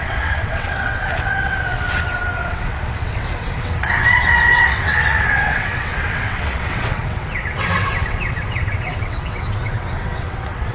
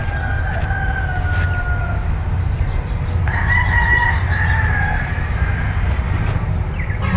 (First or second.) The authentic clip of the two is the second